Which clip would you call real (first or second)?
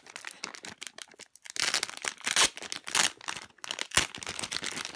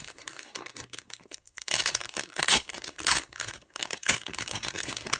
first